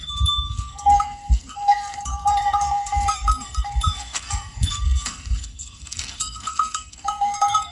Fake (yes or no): yes